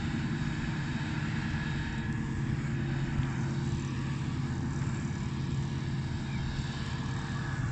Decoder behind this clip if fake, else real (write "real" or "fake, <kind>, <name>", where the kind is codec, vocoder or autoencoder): real